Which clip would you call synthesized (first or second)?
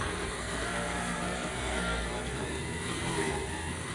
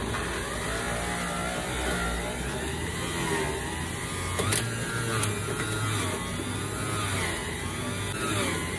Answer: first